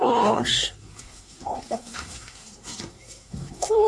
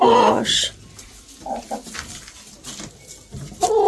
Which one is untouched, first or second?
second